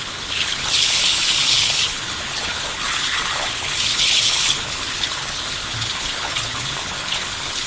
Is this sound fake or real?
fake